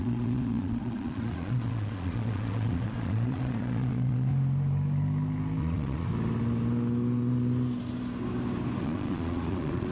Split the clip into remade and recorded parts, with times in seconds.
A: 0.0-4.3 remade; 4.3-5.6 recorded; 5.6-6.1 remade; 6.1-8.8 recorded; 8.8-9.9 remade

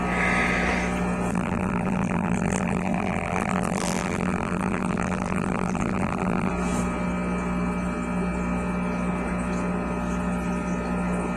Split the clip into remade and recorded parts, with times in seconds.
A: 0.0-1.3 recorded; 1.3-6.5 remade; 6.5-11.4 recorded

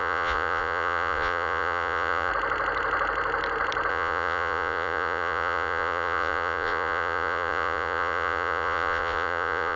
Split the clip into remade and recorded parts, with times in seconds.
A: 0.0-2.3 remade; 2.3-3.9 recorded; 3.9-9.8 remade

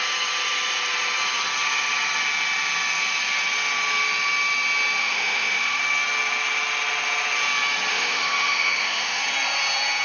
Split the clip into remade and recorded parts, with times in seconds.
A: 0.0-5.0 recorded; 5.0-5.8 remade; 5.8-7.9 recorded; 7.9-9.2 remade; 9.2-10.0 recorded